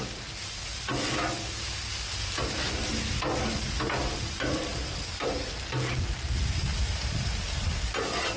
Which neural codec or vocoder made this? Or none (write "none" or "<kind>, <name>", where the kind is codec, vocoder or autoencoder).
none